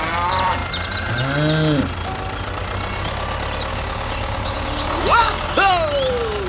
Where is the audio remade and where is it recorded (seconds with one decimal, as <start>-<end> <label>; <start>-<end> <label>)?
0.0-3.7 recorded; 3.7-5.7 remade; 5.7-6.5 recorded